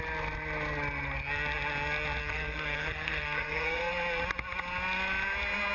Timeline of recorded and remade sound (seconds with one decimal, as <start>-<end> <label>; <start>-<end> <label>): 0.0-2.2 recorded; 2.2-3.9 remade; 3.9-5.7 recorded